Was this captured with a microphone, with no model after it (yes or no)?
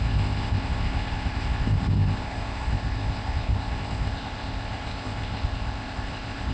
no